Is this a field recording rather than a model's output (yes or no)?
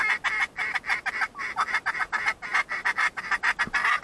yes